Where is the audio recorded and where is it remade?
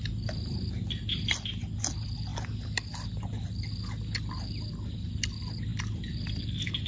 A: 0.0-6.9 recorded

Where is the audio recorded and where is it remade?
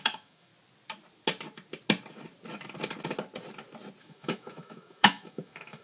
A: 0.0-0.5 remade; 0.5-4.0 recorded; 4.0-5.8 remade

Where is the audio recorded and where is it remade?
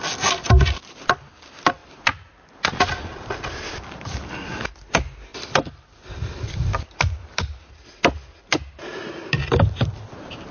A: 0.0-10.5 recorded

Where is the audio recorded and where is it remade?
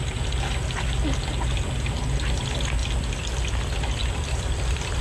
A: 0.0-4.0 recorded; 4.0-5.0 remade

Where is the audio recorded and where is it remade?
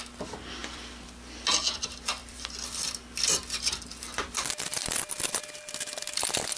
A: 0.0-0.6 recorded; 0.6-1.5 remade; 1.5-2.2 recorded; 2.2-5.7 remade; 5.7-6.6 recorded